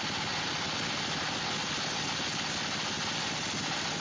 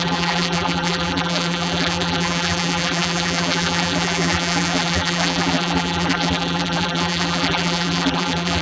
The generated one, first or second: second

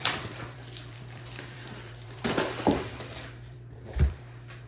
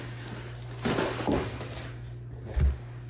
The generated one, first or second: first